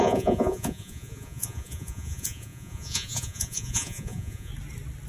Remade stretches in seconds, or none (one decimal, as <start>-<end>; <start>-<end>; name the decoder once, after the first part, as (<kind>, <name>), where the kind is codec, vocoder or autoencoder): 0.0-4.5 (vocoder, Vocos)